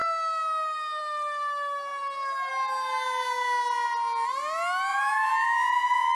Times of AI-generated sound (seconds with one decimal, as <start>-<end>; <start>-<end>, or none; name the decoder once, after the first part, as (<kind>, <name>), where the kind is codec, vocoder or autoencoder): 4.9-6.1 (vocoder, Vocos)